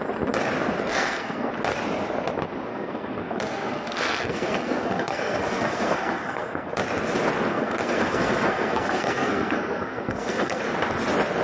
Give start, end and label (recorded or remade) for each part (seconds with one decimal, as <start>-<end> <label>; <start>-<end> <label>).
0.0-0.9 recorded; 0.9-1.5 remade; 1.5-2.7 recorded; 2.7-6.7 remade; 6.7-7.5 recorded; 7.5-10.6 remade; 10.6-11.4 recorded